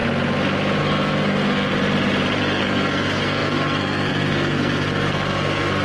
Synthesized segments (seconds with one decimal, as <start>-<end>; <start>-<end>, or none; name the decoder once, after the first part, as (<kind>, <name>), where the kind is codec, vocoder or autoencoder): 0.8-1.7 (codec, SNAC); 2.4-5.8